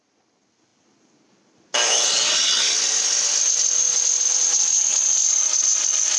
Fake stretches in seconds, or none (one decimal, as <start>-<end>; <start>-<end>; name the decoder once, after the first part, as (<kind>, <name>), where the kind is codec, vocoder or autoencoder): none